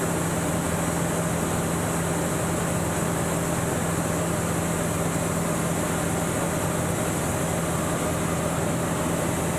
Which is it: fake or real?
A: real